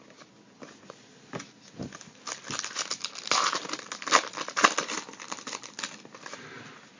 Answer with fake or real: real